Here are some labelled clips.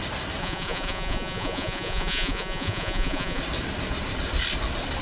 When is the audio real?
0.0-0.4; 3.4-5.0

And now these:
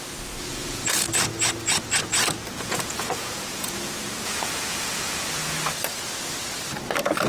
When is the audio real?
0.0-0.5; 1.1-2.4; 5.2-7.3

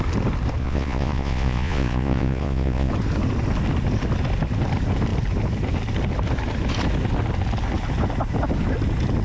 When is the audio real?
0.0-0.6; 2.9-9.2

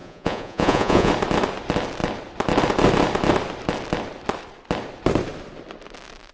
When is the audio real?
1.1-6.3

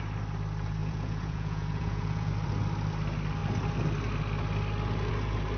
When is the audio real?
0.0-0.8; 2.3-5.6